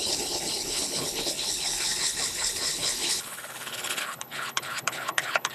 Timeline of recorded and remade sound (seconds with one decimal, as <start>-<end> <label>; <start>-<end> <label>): 0.0-5.5 remade